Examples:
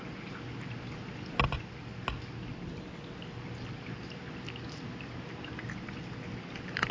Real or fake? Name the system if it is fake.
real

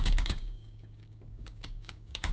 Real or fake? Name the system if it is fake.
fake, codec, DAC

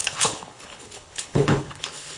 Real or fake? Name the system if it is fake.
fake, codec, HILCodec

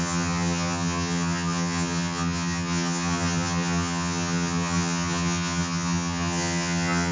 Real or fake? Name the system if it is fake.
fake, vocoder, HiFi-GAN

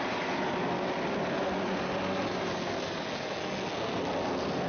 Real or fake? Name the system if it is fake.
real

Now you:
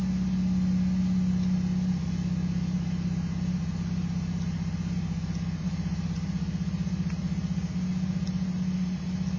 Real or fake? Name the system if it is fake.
real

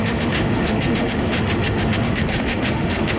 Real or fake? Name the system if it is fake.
fake, autoencoder, DAC-VAE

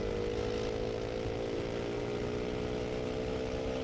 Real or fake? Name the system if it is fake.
real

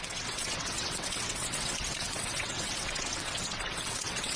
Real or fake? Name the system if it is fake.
fake, vocoder, WaveNeXt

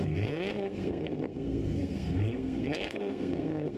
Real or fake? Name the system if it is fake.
fake, codec, SNAC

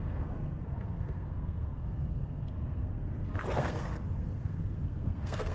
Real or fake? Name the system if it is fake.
fake, codec, SNAC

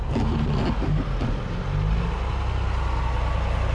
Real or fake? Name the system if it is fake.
real